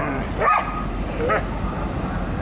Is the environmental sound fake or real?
real